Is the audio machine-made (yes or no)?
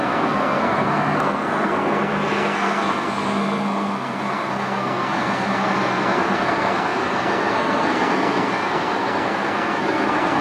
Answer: yes